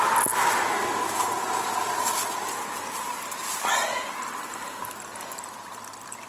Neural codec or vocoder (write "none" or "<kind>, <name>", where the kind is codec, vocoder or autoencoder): none